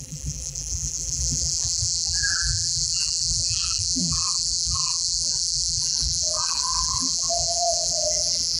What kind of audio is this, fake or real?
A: fake